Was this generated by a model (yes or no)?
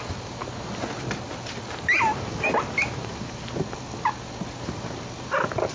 no